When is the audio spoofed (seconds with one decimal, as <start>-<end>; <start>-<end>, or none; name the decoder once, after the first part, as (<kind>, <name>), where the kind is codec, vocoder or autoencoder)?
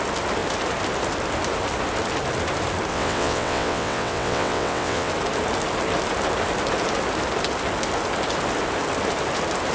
2.9-5.1 (vocoder, WaveNeXt)